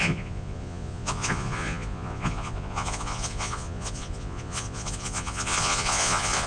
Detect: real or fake fake